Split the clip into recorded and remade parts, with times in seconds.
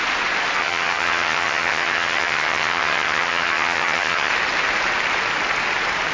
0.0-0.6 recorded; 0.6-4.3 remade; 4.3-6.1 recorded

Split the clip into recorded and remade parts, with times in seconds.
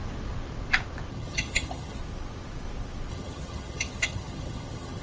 0.0-1.1 recorded; 1.1-2.0 remade; 2.0-3.1 recorded; 3.1-5.0 remade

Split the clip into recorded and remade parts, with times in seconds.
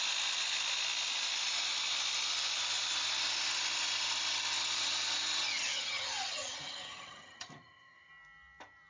0.0-5.6 recorded; 5.6-8.1 remade; 8.1-8.9 recorded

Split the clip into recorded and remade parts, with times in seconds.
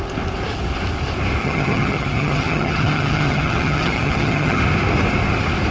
0.0-1.4 recorded; 1.4-4.6 remade; 4.6-5.7 recorded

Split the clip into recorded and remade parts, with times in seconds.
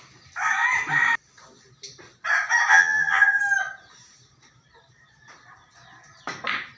0.0-2.7 recorded; 2.7-3.4 remade; 3.4-6.8 recorded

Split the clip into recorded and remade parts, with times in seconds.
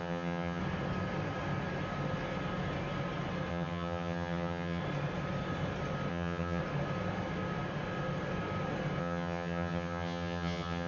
0.0-0.6 remade; 0.6-3.5 recorded; 3.5-4.8 remade; 4.8-6.1 recorded; 6.1-6.6 remade; 6.6-9.0 recorded; 9.0-10.9 remade